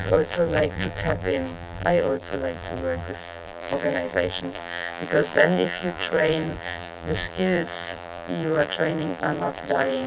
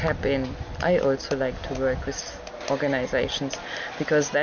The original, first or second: second